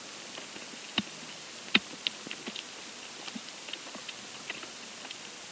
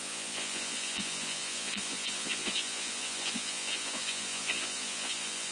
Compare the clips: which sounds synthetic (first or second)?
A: second